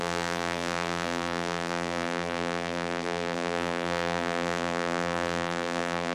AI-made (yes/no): yes